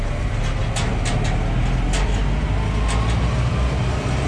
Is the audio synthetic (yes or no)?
no